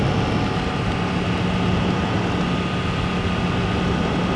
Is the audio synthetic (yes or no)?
no